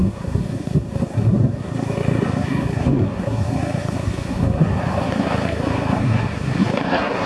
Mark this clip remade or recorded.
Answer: remade